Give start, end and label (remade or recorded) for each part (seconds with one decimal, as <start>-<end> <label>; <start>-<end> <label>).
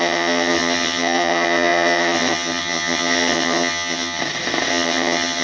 0.0-4.2 remade; 4.2-4.7 recorded; 4.7-5.4 remade